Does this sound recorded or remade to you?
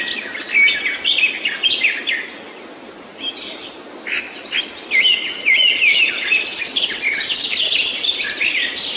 recorded